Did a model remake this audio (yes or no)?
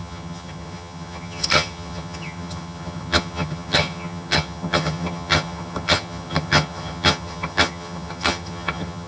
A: yes